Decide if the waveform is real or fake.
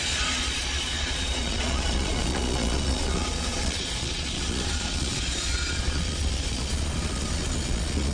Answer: fake